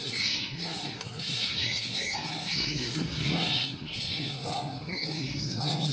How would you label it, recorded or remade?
remade